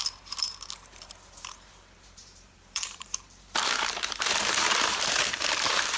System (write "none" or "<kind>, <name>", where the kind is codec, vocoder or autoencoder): vocoder, BigVGAN v2